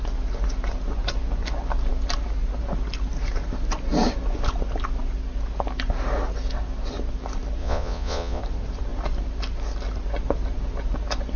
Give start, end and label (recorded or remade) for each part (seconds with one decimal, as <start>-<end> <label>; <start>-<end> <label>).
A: 0.0-7.6 recorded; 7.6-8.4 remade; 8.4-11.4 recorded

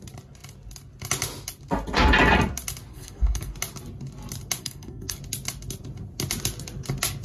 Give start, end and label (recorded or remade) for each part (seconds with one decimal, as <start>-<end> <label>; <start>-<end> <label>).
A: 0.0-2.9 recorded; 2.9-3.5 remade; 3.5-4.6 recorded; 4.6-5.2 remade; 5.2-7.2 recorded

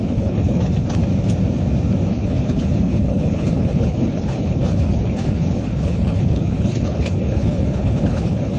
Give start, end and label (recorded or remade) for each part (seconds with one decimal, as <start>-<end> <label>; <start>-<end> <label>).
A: 0.0-1.0 remade; 1.0-2.1 recorded; 2.1-8.6 remade

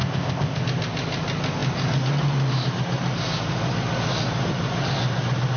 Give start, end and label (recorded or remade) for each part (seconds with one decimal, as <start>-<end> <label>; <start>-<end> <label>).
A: 0.0-0.6 remade; 0.6-5.6 recorded